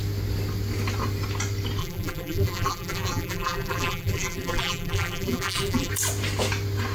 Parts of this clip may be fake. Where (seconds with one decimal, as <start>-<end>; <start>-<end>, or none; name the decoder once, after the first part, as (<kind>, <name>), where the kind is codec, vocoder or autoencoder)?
1.8-5.9 (vocoder, BigVGAN v2)